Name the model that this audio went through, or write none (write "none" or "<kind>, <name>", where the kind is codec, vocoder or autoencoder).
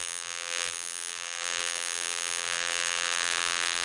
vocoder, BigVGAN v2